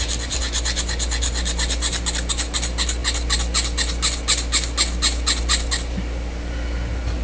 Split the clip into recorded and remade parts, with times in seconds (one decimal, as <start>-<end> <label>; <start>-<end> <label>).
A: 0.0-7.2 recorded

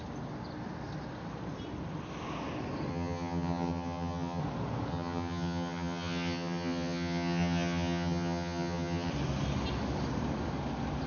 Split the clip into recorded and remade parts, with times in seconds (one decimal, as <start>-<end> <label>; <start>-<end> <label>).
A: 0.0-2.9 recorded; 2.9-4.4 remade; 4.4-4.9 recorded; 4.9-9.1 remade; 9.1-11.1 recorded

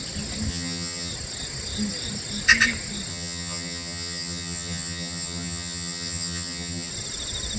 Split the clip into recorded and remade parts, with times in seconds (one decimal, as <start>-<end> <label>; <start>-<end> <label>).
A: 0.0-0.5 recorded; 0.5-1.1 remade; 1.1-3.1 recorded; 3.1-6.9 remade; 6.9-7.6 recorded

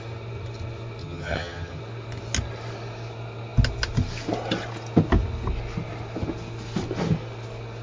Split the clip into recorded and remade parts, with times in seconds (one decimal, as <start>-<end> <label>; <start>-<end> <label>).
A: 0.0-1.0 recorded; 1.0-1.8 remade; 1.8-7.8 recorded

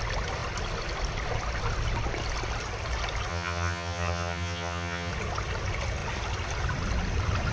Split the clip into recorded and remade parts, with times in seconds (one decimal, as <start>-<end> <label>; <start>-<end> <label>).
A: 0.0-3.3 recorded; 3.3-5.1 remade; 5.1-7.5 recorded

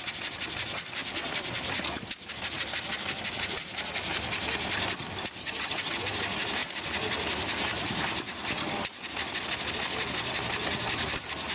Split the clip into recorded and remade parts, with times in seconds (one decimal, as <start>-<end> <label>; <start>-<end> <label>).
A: 0.0-5.4 recorded; 5.4-6.0 remade; 6.0-11.5 recorded

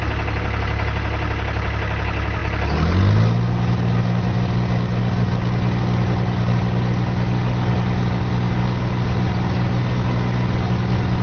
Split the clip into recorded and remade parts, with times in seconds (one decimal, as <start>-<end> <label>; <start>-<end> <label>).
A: 0.0-11.2 recorded